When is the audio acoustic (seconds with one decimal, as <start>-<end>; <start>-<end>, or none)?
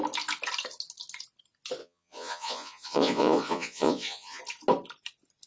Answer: 0.0-1.8; 4.4-5.5